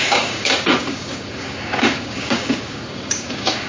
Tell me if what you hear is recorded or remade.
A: remade